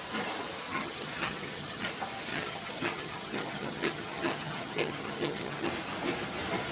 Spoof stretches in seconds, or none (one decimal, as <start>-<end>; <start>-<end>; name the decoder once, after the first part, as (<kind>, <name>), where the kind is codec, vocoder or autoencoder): 0.7-1.9 (vocoder, HiFi-GAN); 2.3-5.7